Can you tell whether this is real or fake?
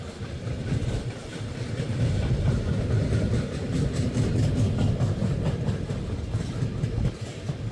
real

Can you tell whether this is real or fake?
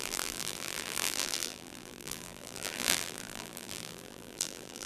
fake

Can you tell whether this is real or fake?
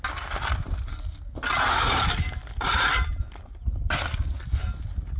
real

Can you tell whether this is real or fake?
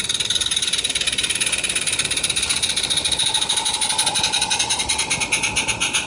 real